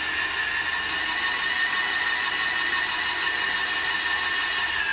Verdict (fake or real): real